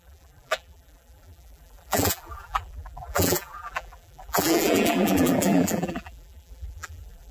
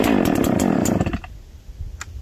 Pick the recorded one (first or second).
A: second